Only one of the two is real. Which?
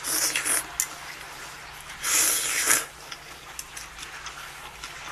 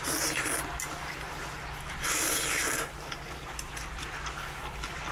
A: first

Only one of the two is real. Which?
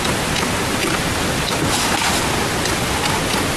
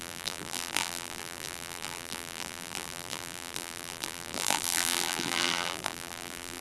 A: first